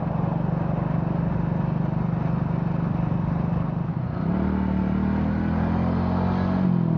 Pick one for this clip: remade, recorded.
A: recorded